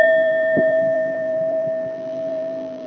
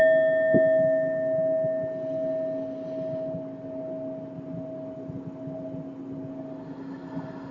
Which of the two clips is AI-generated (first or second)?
first